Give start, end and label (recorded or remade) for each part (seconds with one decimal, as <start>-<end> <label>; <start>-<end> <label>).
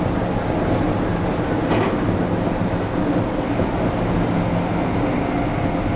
0.0-6.0 recorded